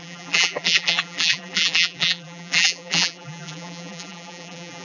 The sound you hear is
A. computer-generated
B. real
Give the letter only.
A